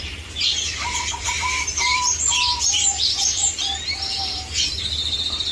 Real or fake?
fake